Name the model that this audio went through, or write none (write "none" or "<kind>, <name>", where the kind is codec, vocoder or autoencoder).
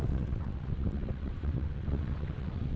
vocoder, WaveNeXt